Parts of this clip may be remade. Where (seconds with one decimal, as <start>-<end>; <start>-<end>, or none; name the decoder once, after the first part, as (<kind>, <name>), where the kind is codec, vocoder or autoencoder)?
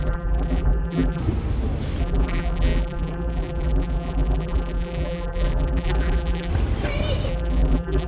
0.0-1.2 (vocoder, BigVGAN v2); 2.0-6.5; 7.3-8.1